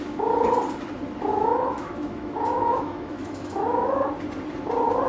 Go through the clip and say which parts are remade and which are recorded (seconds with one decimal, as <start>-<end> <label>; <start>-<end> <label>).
0.0-1.3 recorded; 1.3-4.1 remade; 4.1-5.1 recorded